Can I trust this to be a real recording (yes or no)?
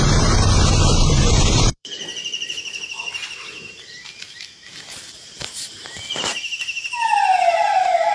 no